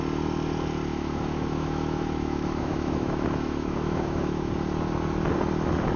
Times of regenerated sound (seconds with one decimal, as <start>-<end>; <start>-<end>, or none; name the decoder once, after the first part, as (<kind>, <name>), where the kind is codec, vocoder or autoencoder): 0.9-4.5 (autoencoder, DAC-VAE)